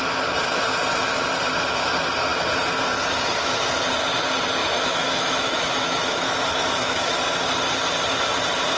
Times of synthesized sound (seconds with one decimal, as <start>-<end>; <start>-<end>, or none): 4.6-7.2